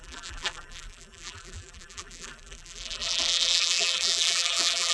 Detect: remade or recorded remade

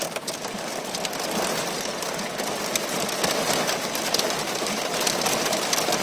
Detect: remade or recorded recorded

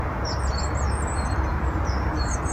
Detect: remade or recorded remade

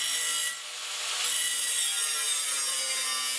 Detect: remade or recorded recorded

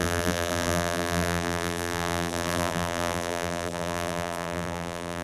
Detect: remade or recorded remade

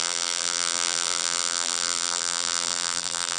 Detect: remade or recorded remade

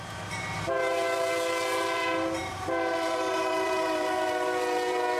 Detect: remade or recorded remade